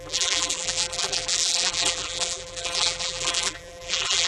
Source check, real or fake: fake